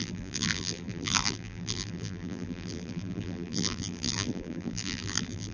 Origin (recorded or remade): remade